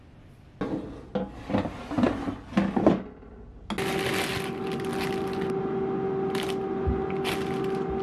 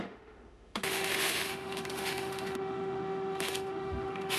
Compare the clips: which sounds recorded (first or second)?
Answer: first